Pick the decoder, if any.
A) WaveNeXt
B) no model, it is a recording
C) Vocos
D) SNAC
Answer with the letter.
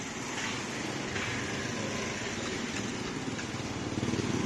B